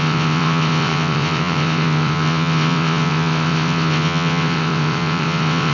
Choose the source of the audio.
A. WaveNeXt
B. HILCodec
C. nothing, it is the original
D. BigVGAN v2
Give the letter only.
A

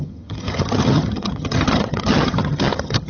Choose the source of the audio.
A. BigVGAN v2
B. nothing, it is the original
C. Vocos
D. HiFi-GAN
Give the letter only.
D